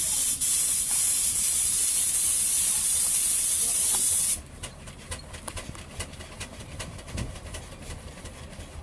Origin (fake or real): fake